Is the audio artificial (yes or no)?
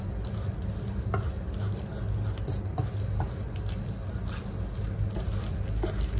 no